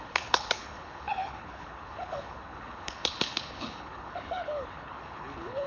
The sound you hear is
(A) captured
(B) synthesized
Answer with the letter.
B